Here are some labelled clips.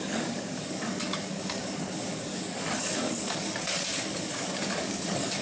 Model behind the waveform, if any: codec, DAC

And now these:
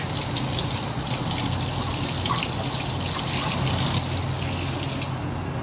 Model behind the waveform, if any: none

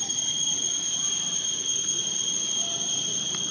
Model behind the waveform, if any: none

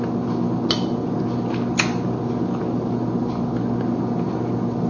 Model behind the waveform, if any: none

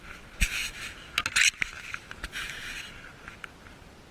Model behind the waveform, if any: none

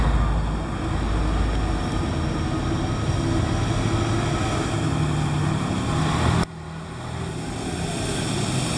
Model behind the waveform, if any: none